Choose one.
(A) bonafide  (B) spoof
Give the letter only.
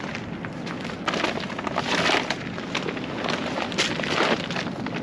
A